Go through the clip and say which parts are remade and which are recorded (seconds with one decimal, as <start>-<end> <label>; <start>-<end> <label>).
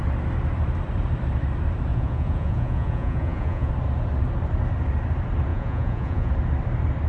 0.0-1.9 recorded; 1.9-3.7 remade; 3.7-5.5 recorded; 5.5-6.3 remade; 6.3-7.1 recorded